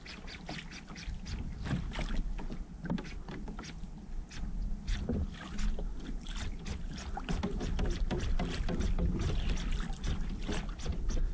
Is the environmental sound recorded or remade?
recorded